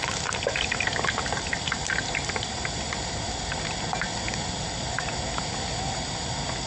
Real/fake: real